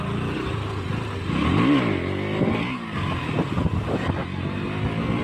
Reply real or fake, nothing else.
real